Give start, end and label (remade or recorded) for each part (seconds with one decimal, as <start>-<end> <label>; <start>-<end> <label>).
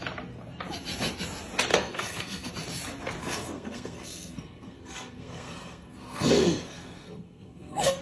0.0-1.7 recorded; 1.7-2.5 remade; 2.5-3.2 recorded; 3.2-8.0 remade